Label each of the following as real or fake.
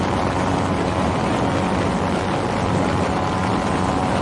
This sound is real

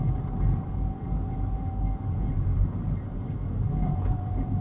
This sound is fake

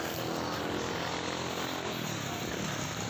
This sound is real